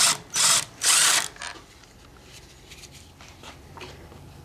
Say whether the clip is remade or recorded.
recorded